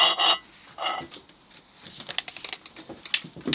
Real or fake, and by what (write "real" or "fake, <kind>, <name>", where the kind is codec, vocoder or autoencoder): real